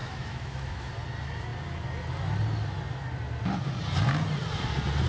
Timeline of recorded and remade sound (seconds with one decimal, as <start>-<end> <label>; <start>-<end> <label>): 0.0-0.9 remade; 0.9-5.1 recorded

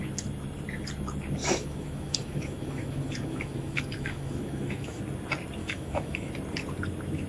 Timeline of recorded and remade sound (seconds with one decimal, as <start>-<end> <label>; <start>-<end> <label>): 0.0-1.4 recorded; 1.4-5.0 remade; 5.0-5.6 recorded; 5.6-6.3 remade; 6.3-7.3 recorded

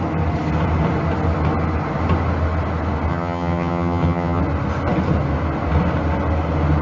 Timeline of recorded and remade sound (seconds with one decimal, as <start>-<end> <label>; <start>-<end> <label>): 0.0-3.1 recorded; 3.1-4.4 remade; 4.4-6.8 recorded

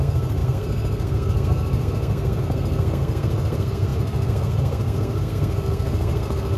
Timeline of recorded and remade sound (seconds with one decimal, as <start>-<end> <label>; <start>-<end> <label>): 0.0-6.6 remade